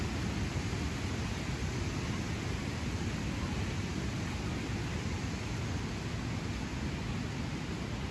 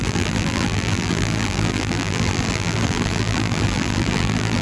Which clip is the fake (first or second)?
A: second